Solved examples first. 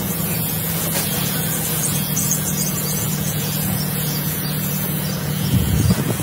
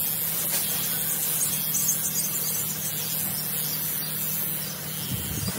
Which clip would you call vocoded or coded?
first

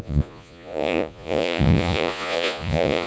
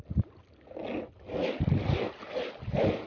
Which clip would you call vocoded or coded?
first